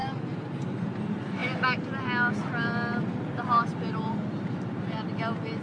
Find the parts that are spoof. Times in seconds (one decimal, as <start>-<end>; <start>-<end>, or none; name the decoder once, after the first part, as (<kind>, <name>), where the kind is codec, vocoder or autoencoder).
0.0-0.6 (vocoder, BigVGAN v2)